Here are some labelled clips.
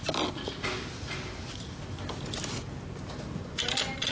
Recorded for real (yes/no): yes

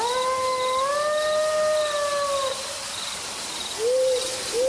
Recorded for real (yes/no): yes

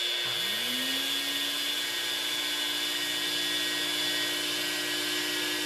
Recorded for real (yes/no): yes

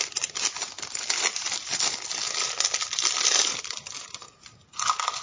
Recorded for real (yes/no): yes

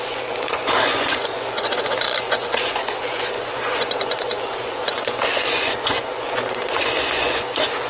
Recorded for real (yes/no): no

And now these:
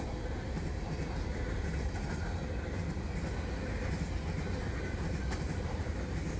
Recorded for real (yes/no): yes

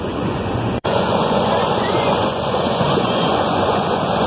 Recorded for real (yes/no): no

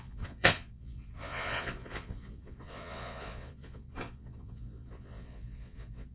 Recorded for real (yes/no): no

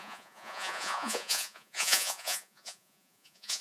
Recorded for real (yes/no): no